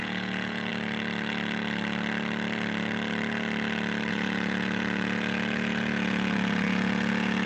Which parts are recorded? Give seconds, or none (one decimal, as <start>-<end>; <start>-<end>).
0.7-4.1